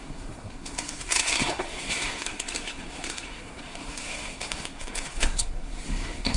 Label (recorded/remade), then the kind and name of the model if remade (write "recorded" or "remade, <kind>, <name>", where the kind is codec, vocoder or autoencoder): remade, codec, SNAC